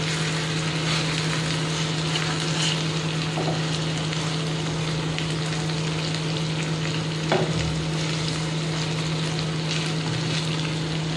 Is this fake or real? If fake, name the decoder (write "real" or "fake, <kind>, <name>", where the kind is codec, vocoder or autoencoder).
real